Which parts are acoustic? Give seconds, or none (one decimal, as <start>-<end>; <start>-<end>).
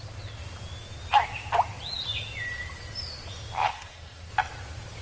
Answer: 0.0-3.7; 4.3-5.0